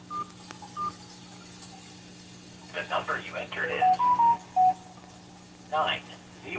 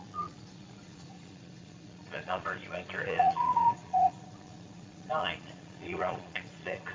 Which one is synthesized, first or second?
second